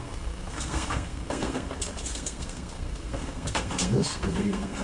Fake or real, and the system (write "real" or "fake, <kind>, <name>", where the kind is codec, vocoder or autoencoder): fake, codec, SNAC